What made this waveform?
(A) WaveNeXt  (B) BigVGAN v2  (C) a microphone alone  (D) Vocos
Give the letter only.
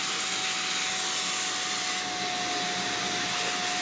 C